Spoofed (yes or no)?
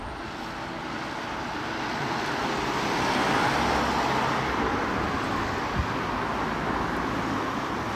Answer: no